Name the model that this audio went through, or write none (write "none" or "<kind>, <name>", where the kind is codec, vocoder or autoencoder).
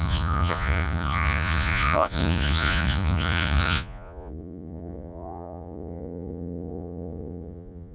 vocoder, Vocos